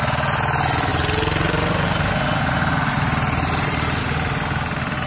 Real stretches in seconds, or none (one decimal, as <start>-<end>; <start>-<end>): 0.0-0.9; 4.0-5.1